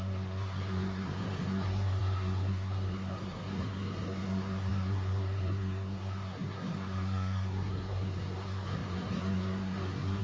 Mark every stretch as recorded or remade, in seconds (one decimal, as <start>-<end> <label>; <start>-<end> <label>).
0.0-10.2 remade